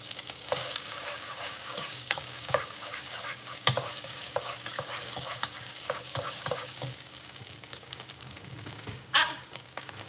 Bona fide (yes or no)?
no